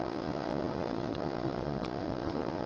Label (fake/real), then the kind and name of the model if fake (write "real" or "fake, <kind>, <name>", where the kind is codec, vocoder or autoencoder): fake, vocoder, Vocos